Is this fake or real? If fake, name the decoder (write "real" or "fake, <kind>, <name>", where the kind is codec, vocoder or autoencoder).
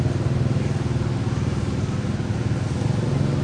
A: real